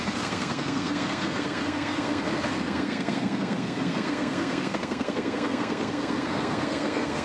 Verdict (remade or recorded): remade